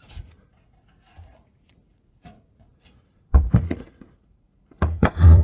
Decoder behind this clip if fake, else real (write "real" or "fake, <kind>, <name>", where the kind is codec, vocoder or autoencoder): fake, vocoder, Vocos